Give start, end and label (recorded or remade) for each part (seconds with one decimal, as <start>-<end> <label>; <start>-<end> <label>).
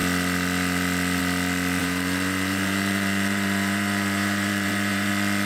0.0-1.8 recorded; 1.8-5.1 remade; 5.1-5.5 recorded